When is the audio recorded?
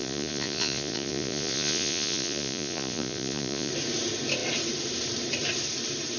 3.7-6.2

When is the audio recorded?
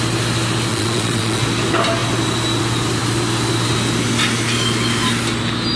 0.0-0.7; 1.4-5.8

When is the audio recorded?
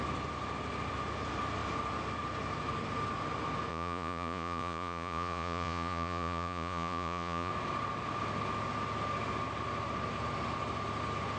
0.0-3.7; 7.5-11.4